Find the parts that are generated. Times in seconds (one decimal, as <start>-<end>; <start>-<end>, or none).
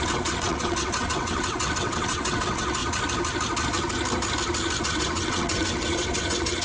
0.0-2.8; 4.8-6.6